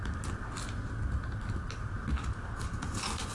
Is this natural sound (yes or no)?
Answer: yes